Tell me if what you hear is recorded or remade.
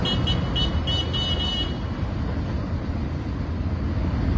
recorded